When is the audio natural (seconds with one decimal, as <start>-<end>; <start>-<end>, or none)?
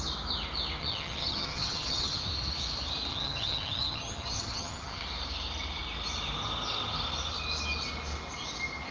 0.0-0.8; 2.2-3.1; 5.0-8.9